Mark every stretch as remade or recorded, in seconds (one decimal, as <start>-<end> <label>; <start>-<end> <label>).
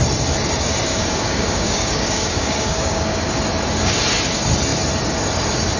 0.0-0.9 recorded; 0.9-3.3 remade; 3.3-5.8 recorded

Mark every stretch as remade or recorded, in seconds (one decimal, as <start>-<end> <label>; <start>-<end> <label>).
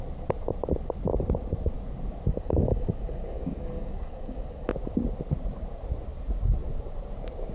0.0-2.3 recorded; 2.3-4.7 remade; 4.7-7.5 recorded